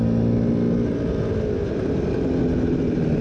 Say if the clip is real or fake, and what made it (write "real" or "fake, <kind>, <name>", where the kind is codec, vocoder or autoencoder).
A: real